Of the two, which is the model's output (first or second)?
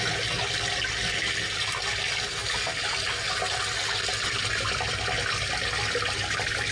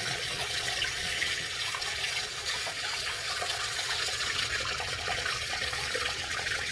second